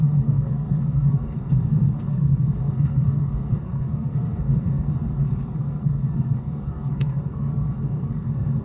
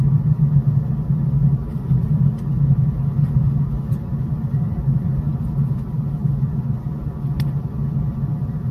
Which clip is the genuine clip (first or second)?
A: second